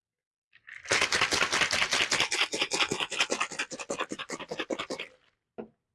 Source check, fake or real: real